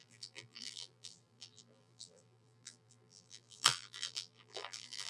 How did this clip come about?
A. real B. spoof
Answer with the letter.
B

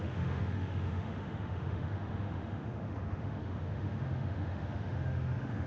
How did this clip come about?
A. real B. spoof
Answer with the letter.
B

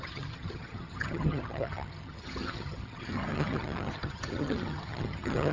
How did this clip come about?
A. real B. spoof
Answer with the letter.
B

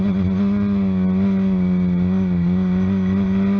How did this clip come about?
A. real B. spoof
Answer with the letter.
A